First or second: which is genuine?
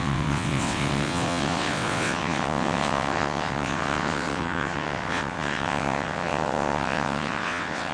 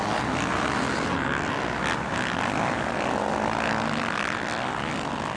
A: second